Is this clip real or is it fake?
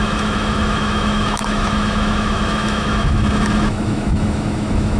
fake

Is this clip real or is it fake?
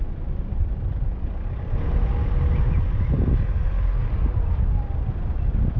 real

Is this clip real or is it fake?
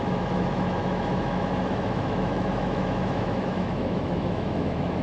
fake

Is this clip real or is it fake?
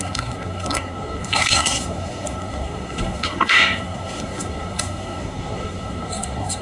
fake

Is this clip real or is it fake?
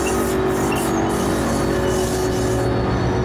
real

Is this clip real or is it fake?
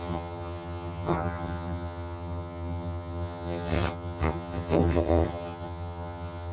fake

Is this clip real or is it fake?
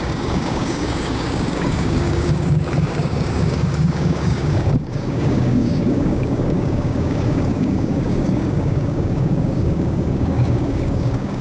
fake